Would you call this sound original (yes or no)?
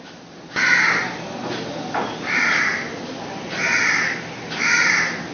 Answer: yes